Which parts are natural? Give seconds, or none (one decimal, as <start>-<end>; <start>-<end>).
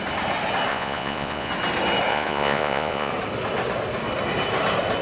0.0-0.7; 1.5-2.1; 3.1-5.0